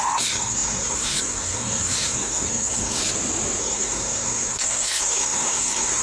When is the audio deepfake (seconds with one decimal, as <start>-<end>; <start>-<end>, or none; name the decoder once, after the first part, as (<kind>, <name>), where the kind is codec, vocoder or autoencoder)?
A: 0.0-3.0 (codec, SNAC); 3.6-6.0

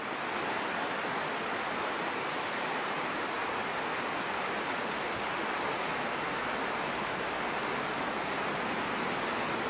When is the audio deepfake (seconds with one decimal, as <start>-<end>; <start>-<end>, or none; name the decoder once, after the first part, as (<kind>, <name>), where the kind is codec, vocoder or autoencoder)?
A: none

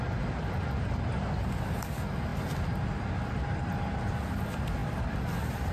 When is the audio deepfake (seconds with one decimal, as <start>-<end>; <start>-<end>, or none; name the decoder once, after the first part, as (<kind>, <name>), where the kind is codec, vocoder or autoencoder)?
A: none